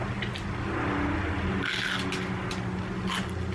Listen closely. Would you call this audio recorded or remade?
recorded